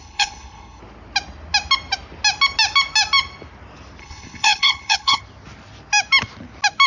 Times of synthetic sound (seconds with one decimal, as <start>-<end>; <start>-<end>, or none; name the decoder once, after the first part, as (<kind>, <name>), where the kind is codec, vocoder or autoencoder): 0.0-0.8 (codec, HILCodec); 4.0-5.2